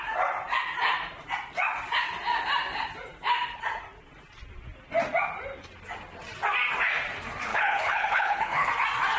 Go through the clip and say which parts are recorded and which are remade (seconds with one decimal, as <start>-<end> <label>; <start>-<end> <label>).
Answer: 0.0-7.5 recorded; 7.5-8.7 remade; 8.7-9.2 recorded